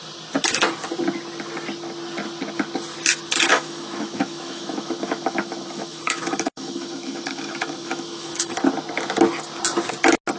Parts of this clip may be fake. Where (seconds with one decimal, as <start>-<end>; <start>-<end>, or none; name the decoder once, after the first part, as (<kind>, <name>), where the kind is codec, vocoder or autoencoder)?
3.5-8.6 (autoencoder, DAC-VAE)